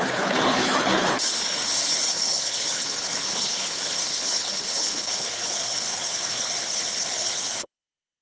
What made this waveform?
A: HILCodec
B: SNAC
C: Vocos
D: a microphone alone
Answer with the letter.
A